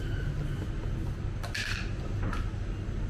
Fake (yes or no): no